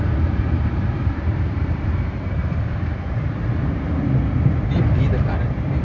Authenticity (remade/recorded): remade